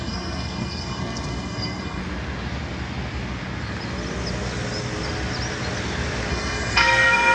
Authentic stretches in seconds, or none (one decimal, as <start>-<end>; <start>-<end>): 2.0-6.3